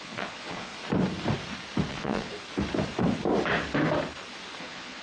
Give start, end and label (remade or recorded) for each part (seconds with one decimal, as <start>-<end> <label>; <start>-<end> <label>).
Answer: 0.0-0.7 remade; 0.7-1.9 recorded; 1.9-2.3 remade; 2.3-4.6 recorded; 4.6-5.0 remade